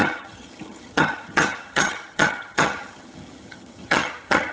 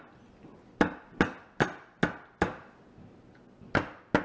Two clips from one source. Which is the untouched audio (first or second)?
second